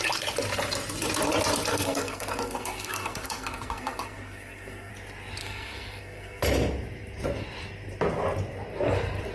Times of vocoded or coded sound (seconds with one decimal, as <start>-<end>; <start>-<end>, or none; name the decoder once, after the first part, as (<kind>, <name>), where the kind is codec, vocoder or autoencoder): 1.7-4.9 (codec, SNAC); 5.4-6.4